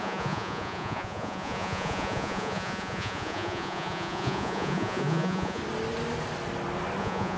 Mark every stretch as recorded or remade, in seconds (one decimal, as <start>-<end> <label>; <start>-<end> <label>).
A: 0.0-5.6 remade; 5.6-7.0 recorded; 7.0-7.4 remade